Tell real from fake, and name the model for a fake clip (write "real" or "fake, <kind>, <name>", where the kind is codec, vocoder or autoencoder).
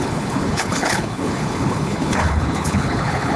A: fake, codec, HILCodec